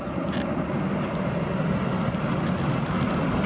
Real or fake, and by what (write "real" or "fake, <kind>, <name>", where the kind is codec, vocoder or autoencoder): real